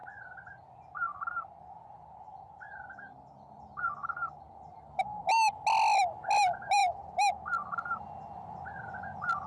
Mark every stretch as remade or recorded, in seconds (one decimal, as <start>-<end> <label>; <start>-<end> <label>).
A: 0.0-9.5 recorded